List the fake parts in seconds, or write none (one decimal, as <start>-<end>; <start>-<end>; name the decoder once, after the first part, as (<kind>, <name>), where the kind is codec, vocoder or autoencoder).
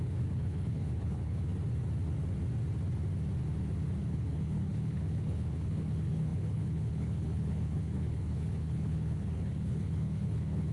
0.0-1.5 (codec, HILCodec); 4.0-10.7